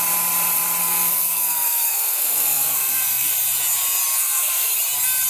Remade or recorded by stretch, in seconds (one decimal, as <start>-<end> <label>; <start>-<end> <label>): 0.0-0.8 recorded; 0.8-3.3 remade; 3.3-4.2 recorded; 4.2-4.7 remade; 4.7-5.3 recorded